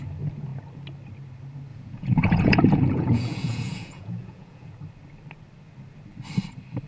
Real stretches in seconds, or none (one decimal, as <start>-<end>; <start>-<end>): 0.0-1.7; 4.7-6.9